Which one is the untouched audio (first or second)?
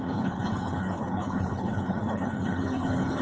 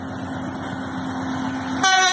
second